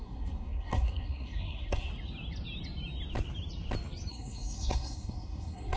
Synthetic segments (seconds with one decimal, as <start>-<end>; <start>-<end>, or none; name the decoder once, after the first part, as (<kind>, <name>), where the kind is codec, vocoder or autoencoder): 0.0-1.9 (codec, SNAC); 4.1-5.8